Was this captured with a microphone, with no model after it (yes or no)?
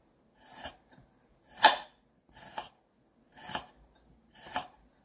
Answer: yes